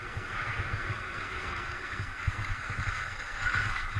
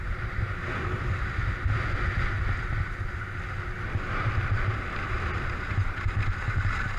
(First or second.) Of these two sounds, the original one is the second